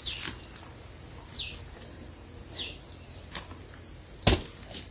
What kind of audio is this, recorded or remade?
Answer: recorded